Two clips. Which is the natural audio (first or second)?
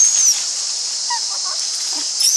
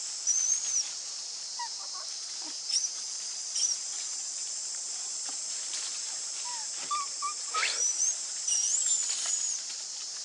first